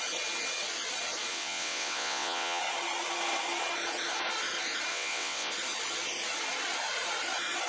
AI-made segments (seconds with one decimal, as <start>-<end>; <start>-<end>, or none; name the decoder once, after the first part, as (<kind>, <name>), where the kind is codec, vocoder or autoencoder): 1.3-2.6 (vocoder, WaveNeXt); 4.9-5.5